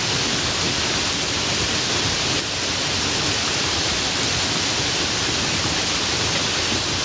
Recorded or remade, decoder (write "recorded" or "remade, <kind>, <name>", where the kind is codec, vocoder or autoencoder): recorded